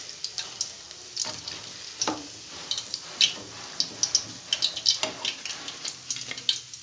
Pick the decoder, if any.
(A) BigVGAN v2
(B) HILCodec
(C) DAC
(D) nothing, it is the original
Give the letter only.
D